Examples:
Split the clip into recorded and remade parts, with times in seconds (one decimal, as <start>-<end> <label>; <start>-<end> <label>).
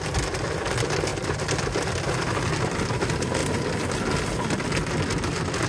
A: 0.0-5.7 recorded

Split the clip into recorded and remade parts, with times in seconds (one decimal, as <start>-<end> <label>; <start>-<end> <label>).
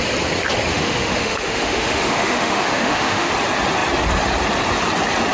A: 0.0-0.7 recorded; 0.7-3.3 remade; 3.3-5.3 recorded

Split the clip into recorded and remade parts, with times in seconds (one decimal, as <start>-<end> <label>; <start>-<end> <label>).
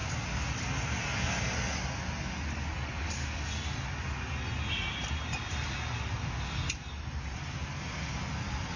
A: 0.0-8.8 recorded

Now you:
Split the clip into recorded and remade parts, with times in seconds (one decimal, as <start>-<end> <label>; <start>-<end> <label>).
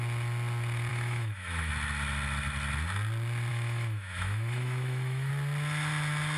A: 0.0-0.9 recorded; 0.9-1.7 remade; 1.7-3.5 recorded; 3.5-5.3 remade; 5.3-6.4 recorded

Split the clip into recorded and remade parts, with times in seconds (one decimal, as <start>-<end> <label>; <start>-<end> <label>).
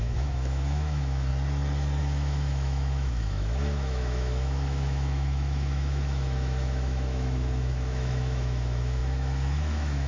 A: 0.0-1.3 remade; 1.3-2.0 recorded; 2.0-10.1 remade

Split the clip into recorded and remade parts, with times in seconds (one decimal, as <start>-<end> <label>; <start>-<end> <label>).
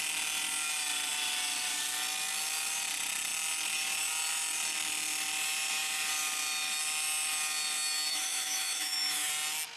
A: 0.0-8.1 recorded; 8.1-9.3 remade; 9.3-9.8 recorded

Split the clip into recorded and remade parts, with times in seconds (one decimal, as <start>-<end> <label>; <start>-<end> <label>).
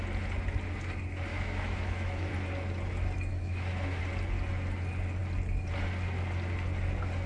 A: 0.0-1.3 recorded; 1.3-2.3 remade; 2.3-3.3 recorded; 3.3-4.0 remade; 4.0-7.3 recorded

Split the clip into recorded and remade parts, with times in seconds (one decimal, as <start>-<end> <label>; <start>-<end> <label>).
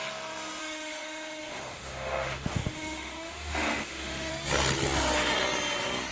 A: 0.0-0.6 recorded; 0.6-4.3 remade; 4.3-6.1 recorded